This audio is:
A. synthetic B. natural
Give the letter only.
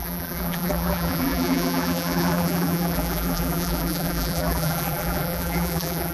A